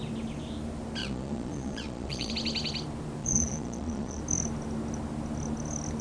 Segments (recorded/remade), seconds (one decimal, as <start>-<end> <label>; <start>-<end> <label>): 0.0-1.0 recorded; 1.0-2.3 remade; 2.3-3.2 recorded; 3.2-4.2 remade; 4.2-6.0 recorded